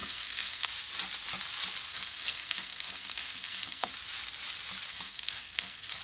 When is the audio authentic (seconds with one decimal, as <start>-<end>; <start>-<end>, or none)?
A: 0.7-1.9; 3.9-4.9